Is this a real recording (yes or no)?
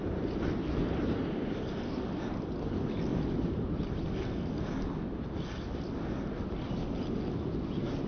yes